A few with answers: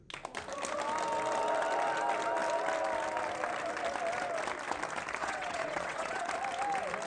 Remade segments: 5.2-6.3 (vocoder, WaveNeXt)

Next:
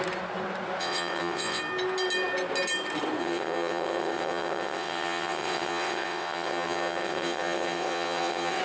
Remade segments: 0.8-1.6 (vocoder, WaveNeXt); 3.2-8.6

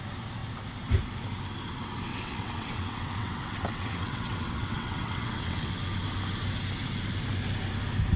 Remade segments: 2.1-5.7 (vocoder, WaveNeXt)

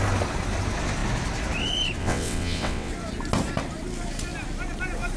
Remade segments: 2.0-2.9 (vocoder, WaveNeXt)

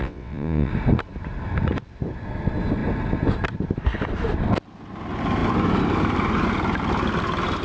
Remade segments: 0.0-0.7 (vocoder, WaveNeXt)

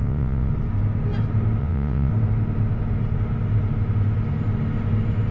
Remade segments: 0.0-0.5 (vocoder, WaveNeXt); 1.6-2.1